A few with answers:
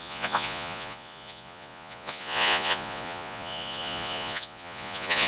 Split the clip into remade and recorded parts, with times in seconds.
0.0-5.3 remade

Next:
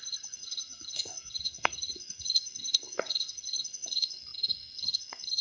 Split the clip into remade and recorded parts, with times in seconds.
0.0-5.4 remade

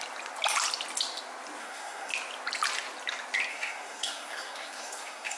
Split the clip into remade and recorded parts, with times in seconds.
0.0-1.6 recorded; 1.6-2.1 remade; 2.1-3.5 recorded; 3.5-5.4 remade

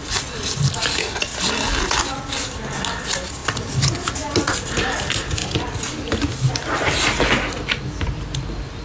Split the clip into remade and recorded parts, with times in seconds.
0.0-8.8 recorded

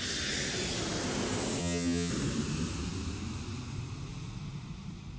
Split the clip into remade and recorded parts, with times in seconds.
0.0-1.6 recorded; 1.6-2.1 remade; 2.1-5.2 recorded

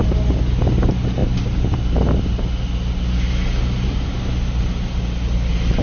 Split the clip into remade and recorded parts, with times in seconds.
0.0-5.8 recorded

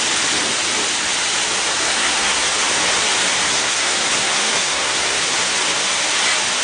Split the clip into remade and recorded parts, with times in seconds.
0.0-1.7 recorded; 1.7-2.5 remade; 2.5-3.5 recorded; 3.5-5.4 remade; 5.4-6.6 recorded